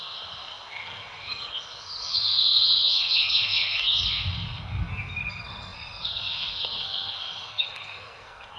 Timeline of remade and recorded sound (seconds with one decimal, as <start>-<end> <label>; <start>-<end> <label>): 0.0-8.6 remade